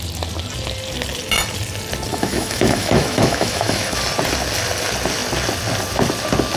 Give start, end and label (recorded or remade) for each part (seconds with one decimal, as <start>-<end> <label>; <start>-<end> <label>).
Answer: 0.0-2.1 recorded; 2.1-4.0 remade; 4.0-6.6 recorded

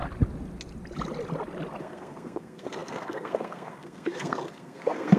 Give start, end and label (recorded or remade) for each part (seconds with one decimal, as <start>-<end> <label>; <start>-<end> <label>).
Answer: 0.0-1.8 recorded; 1.8-5.2 remade

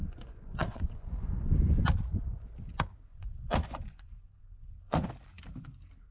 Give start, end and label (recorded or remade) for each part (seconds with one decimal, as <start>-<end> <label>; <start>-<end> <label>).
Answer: 0.0-1.8 remade; 1.8-3.1 recorded; 3.1-5.1 remade; 5.1-6.1 recorded

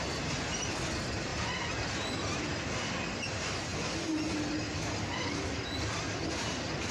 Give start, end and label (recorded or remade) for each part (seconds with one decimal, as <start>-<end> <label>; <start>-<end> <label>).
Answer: 0.0-6.9 recorded